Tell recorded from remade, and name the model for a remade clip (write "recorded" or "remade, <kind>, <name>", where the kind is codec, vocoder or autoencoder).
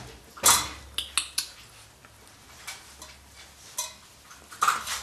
recorded